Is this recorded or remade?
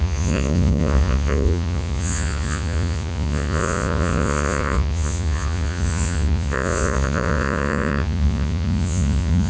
remade